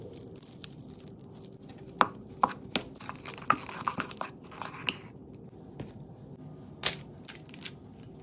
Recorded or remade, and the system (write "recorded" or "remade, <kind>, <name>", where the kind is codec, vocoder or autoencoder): recorded